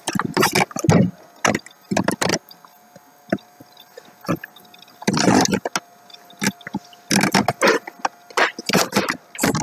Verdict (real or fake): real